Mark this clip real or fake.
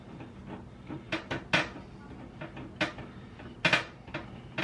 real